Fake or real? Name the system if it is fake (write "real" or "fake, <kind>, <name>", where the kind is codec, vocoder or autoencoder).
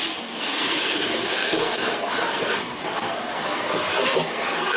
fake, codec, SNAC